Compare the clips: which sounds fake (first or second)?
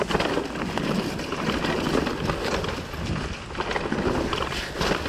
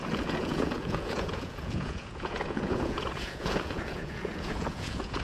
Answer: second